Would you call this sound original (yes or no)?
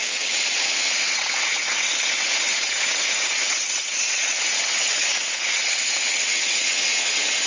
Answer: no